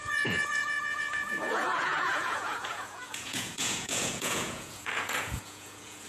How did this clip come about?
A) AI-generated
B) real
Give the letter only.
A